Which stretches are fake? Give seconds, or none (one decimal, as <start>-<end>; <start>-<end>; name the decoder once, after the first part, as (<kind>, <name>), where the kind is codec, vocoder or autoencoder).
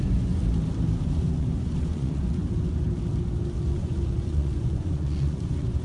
0.0-0.4 (vocoder, Vocos); 1.0-2.4; 3.7-5.8